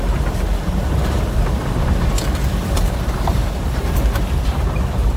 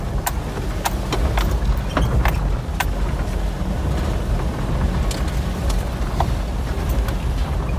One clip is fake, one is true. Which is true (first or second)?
second